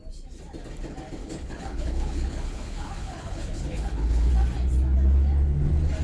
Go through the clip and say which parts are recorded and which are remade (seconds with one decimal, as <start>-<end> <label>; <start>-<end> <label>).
0.0-1.2 recorded; 1.2-4.3 remade; 4.3-6.0 recorded